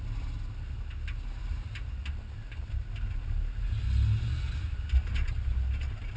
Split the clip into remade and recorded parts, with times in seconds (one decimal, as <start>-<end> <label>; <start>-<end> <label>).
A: 0.0-6.2 recorded

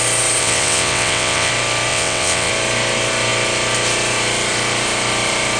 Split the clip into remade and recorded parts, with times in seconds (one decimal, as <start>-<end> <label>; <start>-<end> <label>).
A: 0.0-0.4 recorded; 0.4-1.5 remade; 1.5-1.9 recorded; 1.9-2.5 remade; 2.5-5.6 recorded

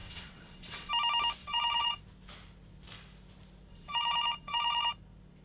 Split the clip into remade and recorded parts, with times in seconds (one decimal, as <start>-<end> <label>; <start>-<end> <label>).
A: 0.0-0.9 remade; 0.9-1.4 recorded; 1.4-2.0 remade; 2.0-3.7 recorded; 3.7-4.9 remade; 4.9-5.4 recorded

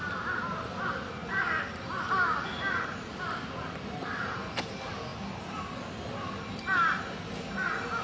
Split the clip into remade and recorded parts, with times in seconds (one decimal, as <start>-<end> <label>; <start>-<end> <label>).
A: 0.0-8.0 recorded